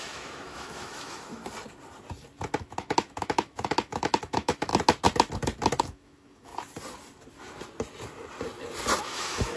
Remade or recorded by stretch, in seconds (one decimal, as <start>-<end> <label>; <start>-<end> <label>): 0.0-1.4 remade; 1.4-2.6 recorded; 2.6-4.7 remade; 4.7-5.8 recorded; 5.8-6.5 remade; 6.5-9.0 recorded; 9.0-9.6 remade